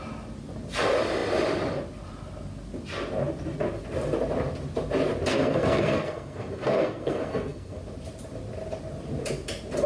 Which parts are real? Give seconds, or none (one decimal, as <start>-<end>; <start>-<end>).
0.0-5.3; 7.8-9.9